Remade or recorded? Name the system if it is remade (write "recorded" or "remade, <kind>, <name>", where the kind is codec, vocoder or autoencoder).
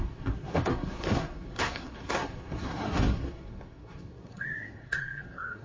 remade, codec, SNAC